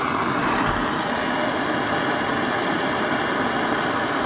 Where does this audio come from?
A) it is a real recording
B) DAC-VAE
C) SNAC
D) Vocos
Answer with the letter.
A